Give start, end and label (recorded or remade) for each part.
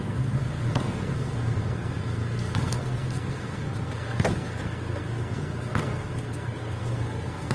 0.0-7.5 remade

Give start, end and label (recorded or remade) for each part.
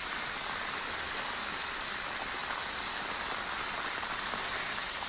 0.0-5.1 recorded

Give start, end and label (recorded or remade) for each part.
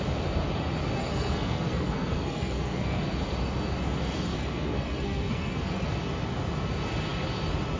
0.0-1.0 recorded; 1.0-3.0 remade; 3.0-4.3 recorded; 4.3-5.9 remade; 5.9-7.8 recorded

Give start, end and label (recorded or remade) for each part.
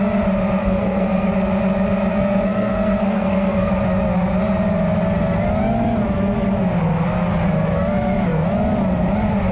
0.0-0.6 recorded; 0.6-1.3 remade; 1.3-2.1 recorded; 2.1-3.7 remade; 3.7-9.5 recorded